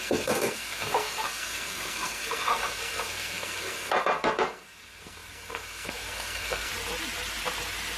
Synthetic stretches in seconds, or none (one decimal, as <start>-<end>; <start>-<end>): 0.0-6.7